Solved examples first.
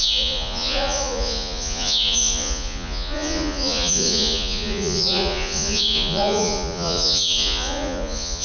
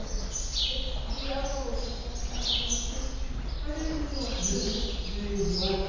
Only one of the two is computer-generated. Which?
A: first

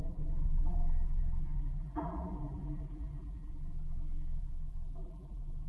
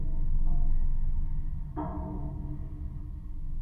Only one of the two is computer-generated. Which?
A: first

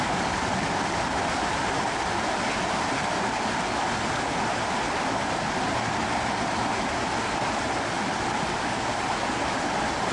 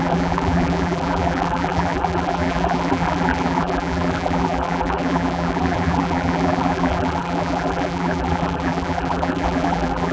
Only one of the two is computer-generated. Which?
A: second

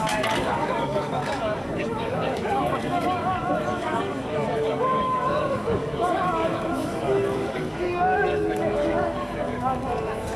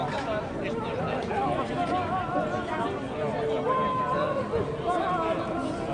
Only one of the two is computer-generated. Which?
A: first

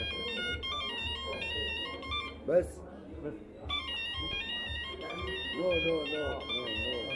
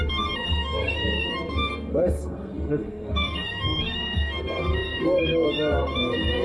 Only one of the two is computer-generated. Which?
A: second